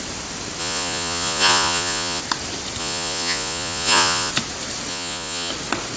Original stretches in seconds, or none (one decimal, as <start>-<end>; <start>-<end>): 0.0-0.6; 2.2-2.8; 4.3-4.9; 5.5-6.0